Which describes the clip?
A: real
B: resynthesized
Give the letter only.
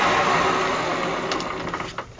A